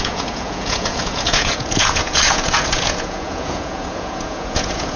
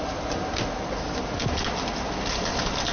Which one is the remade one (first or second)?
first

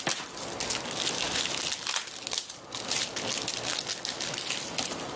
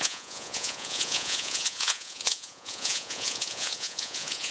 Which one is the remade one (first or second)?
second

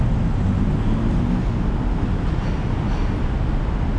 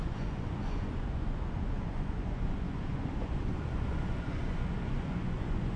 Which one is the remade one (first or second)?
second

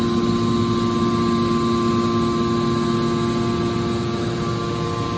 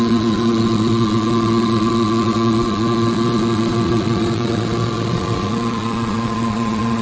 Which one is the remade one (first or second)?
second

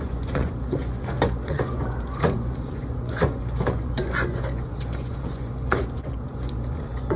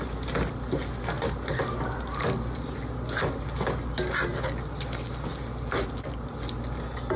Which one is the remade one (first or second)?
first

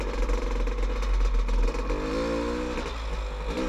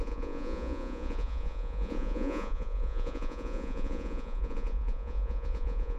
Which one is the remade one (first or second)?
second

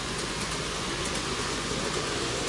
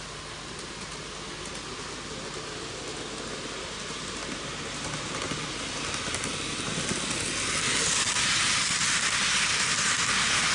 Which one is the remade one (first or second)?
first